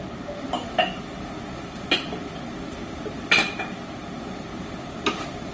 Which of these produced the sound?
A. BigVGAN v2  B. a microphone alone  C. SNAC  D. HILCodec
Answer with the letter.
B